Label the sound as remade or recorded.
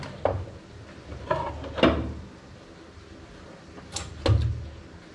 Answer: recorded